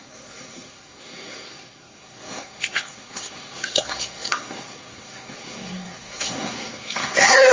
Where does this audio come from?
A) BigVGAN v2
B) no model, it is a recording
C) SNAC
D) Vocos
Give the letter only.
C